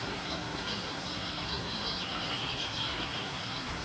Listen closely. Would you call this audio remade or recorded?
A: remade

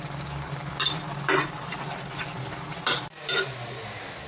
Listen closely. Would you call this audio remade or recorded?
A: recorded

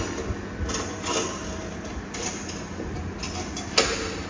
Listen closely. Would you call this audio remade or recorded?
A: recorded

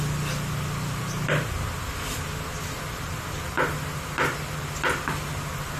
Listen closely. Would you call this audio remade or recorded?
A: recorded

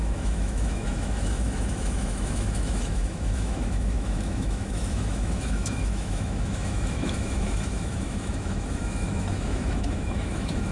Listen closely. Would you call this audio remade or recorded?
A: remade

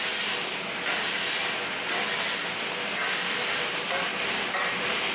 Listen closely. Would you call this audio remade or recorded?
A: recorded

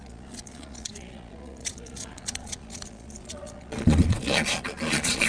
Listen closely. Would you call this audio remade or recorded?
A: remade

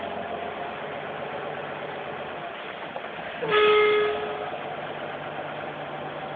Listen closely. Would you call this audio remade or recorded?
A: recorded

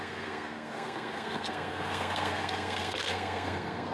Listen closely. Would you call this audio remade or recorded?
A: remade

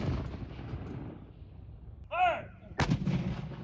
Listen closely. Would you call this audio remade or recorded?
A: recorded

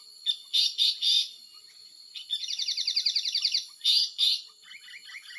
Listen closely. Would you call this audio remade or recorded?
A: recorded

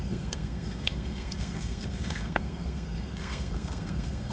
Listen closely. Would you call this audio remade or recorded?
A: remade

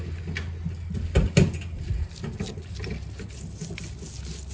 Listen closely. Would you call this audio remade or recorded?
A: recorded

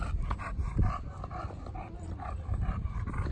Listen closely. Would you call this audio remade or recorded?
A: remade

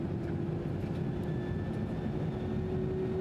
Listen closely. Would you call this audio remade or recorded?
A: recorded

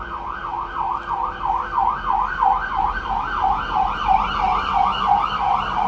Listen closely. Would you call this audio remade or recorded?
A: recorded